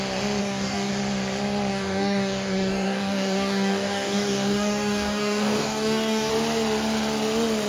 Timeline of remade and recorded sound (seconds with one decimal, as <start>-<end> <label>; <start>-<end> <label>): 0.0-0.4 recorded; 0.4-0.9 remade; 0.9-1.7 recorded; 1.7-6.3 remade; 6.3-7.7 recorded